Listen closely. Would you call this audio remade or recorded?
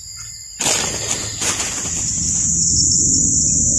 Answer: recorded